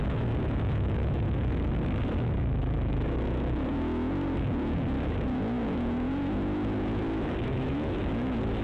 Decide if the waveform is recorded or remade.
remade